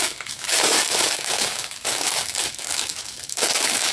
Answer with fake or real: fake